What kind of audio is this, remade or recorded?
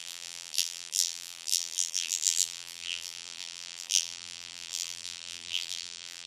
remade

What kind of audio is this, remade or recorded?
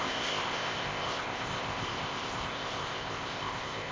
remade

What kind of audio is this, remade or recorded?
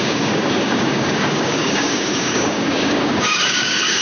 remade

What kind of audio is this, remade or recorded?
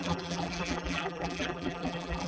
remade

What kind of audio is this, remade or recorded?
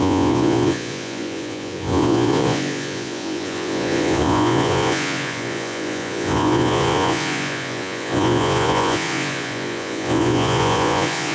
remade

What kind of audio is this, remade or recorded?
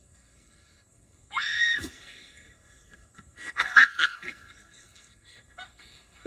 remade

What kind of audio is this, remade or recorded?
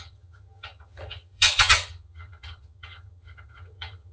remade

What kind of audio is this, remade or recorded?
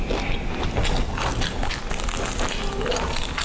recorded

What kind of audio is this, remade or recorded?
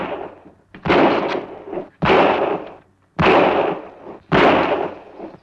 recorded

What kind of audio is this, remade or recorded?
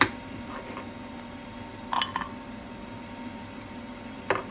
recorded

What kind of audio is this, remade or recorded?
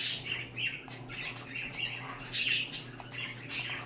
recorded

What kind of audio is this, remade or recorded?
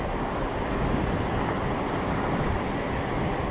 recorded